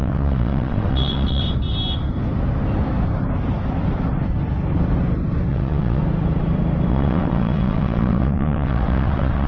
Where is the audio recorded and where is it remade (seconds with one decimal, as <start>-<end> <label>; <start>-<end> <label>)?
0.0-1.4 remade; 1.4-5.5 recorded; 5.5-6.0 remade; 6.0-6.9 recorded; 6.9-9.5 remade